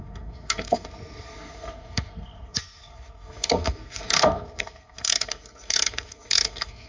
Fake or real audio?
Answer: fake